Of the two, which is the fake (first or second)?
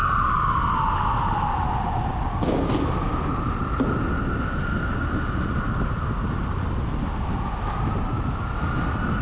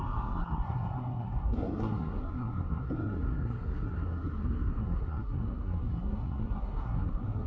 second